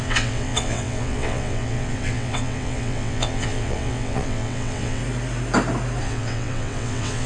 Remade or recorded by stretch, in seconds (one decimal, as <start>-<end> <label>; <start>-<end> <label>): 0.0-5.0 remade; 5.0-6.0 recorded; 6.0-7.3 remade